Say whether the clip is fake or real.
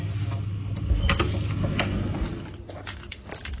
real